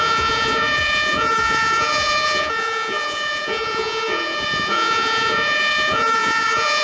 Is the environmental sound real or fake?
fake